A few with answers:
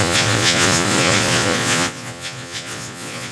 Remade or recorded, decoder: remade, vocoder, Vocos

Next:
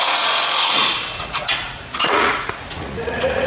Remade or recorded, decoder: remade, vocoder, Vocos